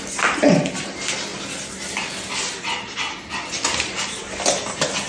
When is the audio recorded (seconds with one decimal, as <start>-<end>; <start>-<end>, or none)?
0.0-5.1